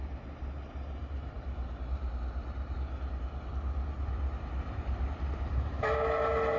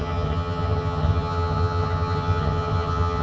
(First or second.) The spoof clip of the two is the second